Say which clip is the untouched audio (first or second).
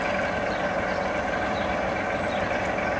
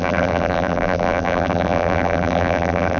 first